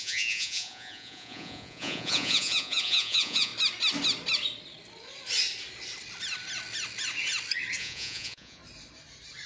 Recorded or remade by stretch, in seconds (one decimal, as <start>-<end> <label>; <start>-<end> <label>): 0.0-3.5 remade; 3.5-7.8 recorded; 7.8-8.6 remade; 8.6-9.5 recorded